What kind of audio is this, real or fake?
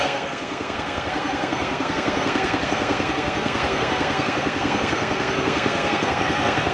fake